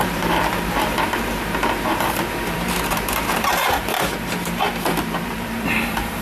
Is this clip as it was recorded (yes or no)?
no